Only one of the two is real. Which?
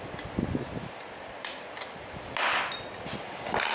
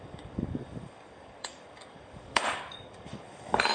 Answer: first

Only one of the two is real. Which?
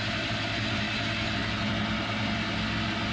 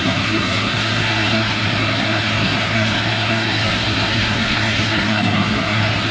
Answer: first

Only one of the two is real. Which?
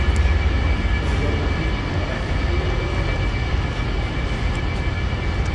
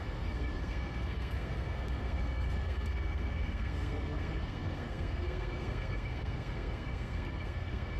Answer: first